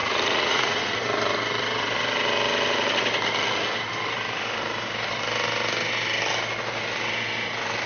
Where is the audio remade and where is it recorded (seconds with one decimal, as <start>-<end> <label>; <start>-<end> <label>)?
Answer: 0.0-1.0 remade; 1.0-7.9 recorded